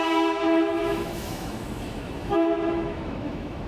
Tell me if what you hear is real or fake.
fake